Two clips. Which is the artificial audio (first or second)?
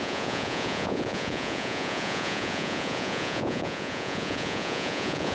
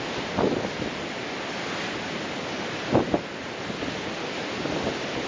first